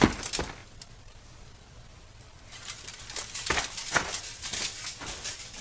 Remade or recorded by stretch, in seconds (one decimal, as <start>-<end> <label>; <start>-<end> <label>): 0.0-2.9 remade; 2.9-5.6 recorded